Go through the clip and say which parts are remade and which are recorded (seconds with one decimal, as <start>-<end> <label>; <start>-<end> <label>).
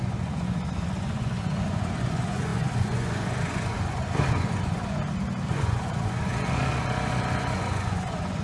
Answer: 0.0-5.0 remade; 5.0-5.5 recorded; 5.5-8.4 remade